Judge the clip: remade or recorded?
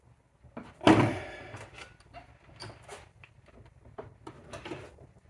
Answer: recorded